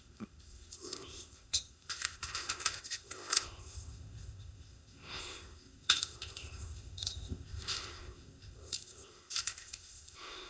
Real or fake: fake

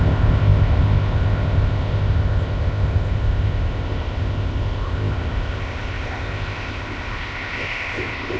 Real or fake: fake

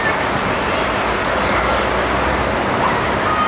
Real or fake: real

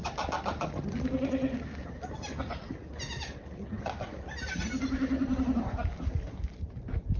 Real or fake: real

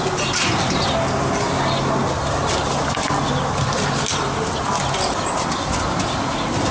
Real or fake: real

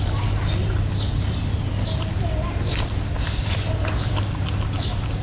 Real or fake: real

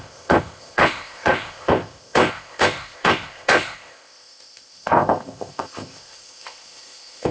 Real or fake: fake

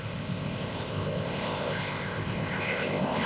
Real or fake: fake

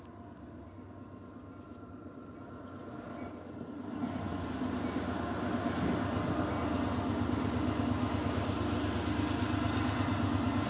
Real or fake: real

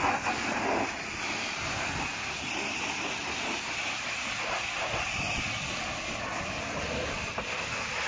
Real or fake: real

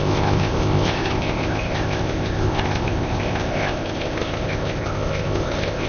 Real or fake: fake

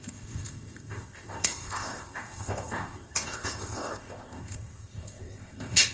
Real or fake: fake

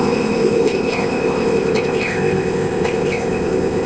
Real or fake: fake